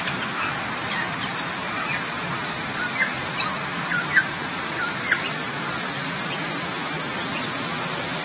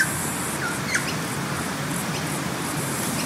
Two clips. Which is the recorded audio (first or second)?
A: second